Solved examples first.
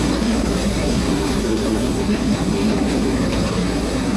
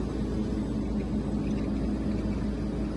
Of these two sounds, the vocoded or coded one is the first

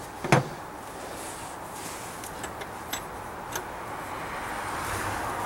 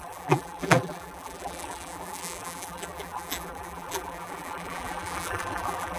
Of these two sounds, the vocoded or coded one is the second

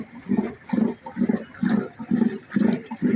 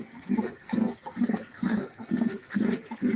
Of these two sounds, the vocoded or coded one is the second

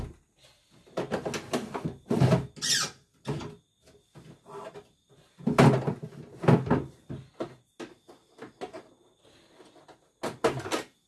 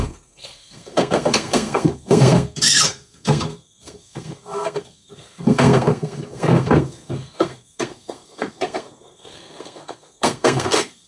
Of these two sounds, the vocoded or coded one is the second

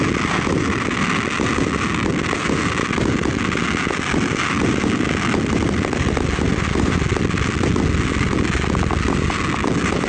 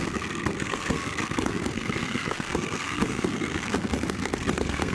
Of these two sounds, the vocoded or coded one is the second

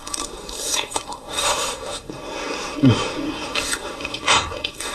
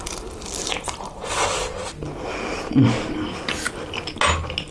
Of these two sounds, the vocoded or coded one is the first